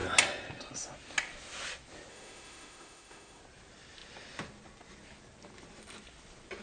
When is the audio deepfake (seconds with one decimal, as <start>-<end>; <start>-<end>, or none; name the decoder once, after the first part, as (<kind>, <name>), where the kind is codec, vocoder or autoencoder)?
2.1-3.4 (autoencoder, DAC-VAE)